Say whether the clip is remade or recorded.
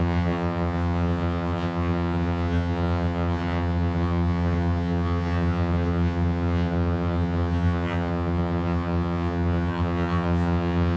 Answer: remade